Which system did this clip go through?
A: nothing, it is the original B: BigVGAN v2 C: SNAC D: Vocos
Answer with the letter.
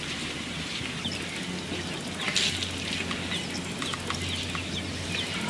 A